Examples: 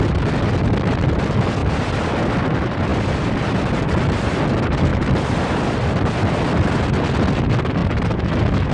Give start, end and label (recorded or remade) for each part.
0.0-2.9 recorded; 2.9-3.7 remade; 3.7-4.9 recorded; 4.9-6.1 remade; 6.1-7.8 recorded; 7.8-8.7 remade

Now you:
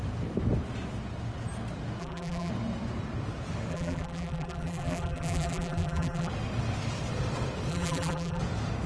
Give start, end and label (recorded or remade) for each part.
0.0-2.0 recorded; 2.0-2.5 remade; 2.5-3.7 recorded; 3.7-6.3 remade; 6.3-7.7 recorded; 7.7-8.4 remade; 8.4-8.9 recorded

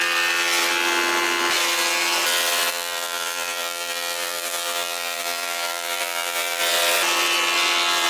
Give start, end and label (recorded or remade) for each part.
0.0-2.7 recorded; 2.7-6.6 remade; 6.6-8.1 recorded

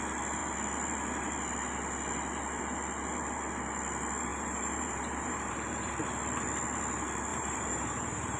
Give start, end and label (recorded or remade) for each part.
0.0-4.3 recorded; 4.3-5.9 remade; 5.9-7.3 recorded; 7.3-8.4 remade

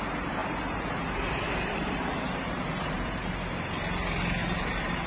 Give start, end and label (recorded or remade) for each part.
0.0-0.4 recorded; 0.4-3.5 remade; 3.5-4.4 recorded; 4.4-5.1 remade

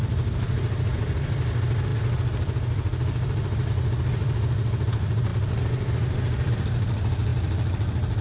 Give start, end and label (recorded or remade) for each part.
0.0-8.2 recorded